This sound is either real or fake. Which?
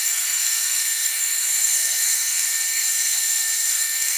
fake